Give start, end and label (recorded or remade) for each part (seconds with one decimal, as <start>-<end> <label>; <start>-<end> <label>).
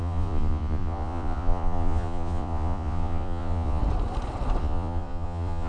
0.0-3.8 remade; 3.8-4.6 recorded; 4.6-5.7 remade